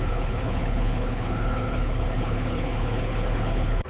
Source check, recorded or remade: remade